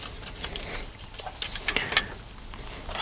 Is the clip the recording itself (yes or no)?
yes